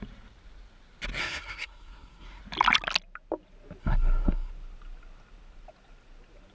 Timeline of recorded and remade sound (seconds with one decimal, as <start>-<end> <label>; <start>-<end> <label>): 0.0-1.2 recorded; 1.2-2.4 remade; 2.4-3.8 recorded; 3.8-4.5 remade; 4.5-6.5 recorded